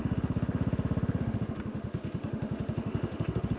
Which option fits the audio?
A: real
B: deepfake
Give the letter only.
B